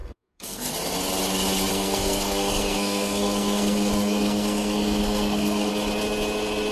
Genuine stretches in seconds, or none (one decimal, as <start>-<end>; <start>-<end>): 0.7-1.7; 5.7-6.7